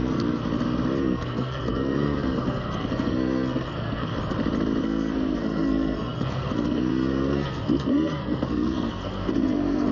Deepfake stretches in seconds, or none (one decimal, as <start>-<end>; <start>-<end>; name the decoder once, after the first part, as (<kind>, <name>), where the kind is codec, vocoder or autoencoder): 0.0-0.4 (codec, SNAC); 1.0-4.1; 4.8-9.9